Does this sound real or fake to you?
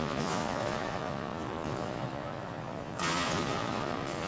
fake